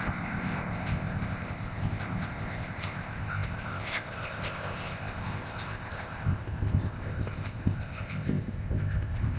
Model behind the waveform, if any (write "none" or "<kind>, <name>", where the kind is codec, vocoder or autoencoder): codec, ZipCodec